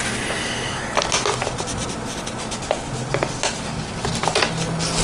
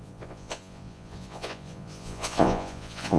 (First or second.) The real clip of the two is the first